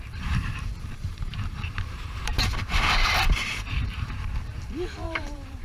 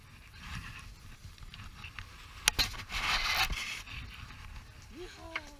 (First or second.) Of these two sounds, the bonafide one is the second